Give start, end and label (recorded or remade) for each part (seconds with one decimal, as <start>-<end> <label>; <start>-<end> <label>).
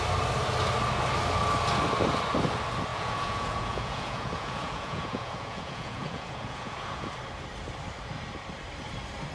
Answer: 0.0-2.9 recorded; 2.9-7.1 remade; 7.1-9.3 recorded